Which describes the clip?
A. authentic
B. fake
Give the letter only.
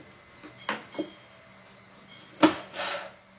A